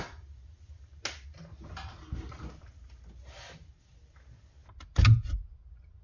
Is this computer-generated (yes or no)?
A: no